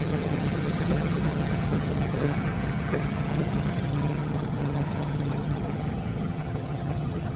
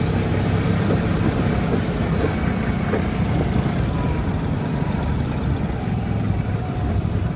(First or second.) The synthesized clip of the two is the first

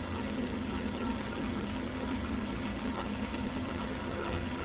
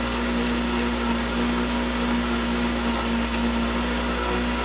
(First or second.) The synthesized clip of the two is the first